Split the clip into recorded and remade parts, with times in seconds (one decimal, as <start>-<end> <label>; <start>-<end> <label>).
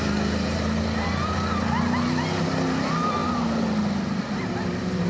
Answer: 0.0-5.1 recorded